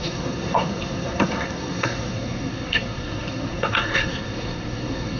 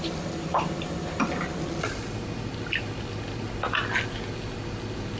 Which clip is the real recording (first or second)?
second